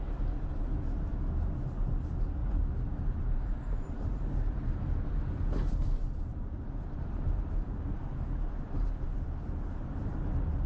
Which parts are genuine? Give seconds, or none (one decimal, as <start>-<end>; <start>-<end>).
0.0-2.4; 5.0-6.3; 7.4-10.7